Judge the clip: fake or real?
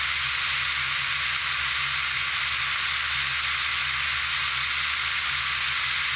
real